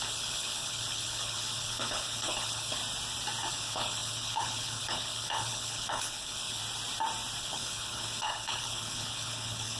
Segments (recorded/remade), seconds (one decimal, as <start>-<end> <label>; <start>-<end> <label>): 0.0-2.8 remade; 2.8-3.5 recorded; 3.5-6.6 remade; 6.6-7.4 recorded; 7.4-9.8 remade